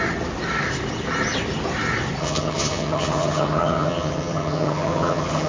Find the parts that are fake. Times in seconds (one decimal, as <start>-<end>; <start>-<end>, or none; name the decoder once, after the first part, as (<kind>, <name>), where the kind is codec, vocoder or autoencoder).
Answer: 2.2-5.5 (vocoder, HiFi-GAN)